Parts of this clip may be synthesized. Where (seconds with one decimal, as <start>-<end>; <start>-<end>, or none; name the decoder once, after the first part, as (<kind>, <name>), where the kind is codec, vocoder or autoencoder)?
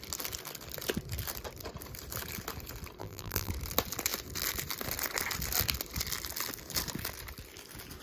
3.0-3.5 (vocoder, BigVGAN v2)